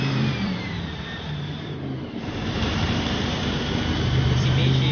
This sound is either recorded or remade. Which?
remade